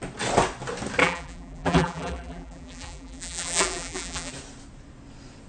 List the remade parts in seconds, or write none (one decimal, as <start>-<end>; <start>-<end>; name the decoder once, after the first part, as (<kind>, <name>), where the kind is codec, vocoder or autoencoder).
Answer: 1.0-4.3 (vocoder, BigVGAN v2)

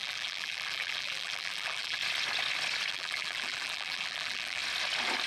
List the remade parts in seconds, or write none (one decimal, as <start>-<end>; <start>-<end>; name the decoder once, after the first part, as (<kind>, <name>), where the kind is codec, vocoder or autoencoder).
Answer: 0.0-2.0 (vocoder, BigVGAN v2); 2.9-4.6

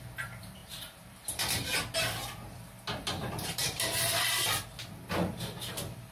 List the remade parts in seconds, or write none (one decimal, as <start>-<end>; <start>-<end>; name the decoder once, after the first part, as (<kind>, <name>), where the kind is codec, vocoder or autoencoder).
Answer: 0.0-1.7 (vocoder, BigVGAN v2); 3.2-4.3

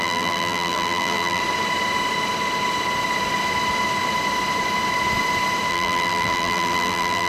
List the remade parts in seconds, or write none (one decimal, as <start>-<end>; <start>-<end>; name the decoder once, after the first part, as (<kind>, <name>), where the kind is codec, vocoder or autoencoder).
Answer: 0.0-1.4 (vocoder, BigVGAN v2); 5.7-7.3

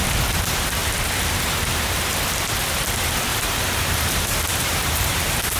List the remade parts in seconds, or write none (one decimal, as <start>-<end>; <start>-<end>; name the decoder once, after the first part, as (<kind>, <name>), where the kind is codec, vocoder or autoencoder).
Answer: 3.3-5.6 (vocoder, BigVGAN v2)

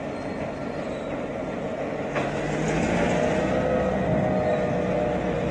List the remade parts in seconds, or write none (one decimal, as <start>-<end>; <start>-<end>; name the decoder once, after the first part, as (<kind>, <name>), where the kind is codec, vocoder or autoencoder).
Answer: 0.6-1.7 (vocoder, BigVGAN v2)

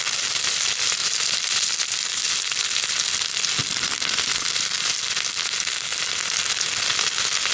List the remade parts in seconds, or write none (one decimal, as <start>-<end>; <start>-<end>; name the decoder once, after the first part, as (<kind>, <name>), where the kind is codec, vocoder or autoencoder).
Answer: 1.0-2.8 (vocoder, BigVGAN v2); 3.6-4.9; 5.9-6.5